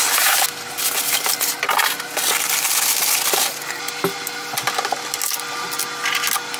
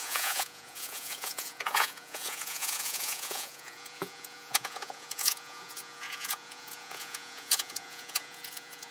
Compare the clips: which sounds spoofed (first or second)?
second